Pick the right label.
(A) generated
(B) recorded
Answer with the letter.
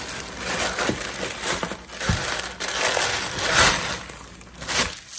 B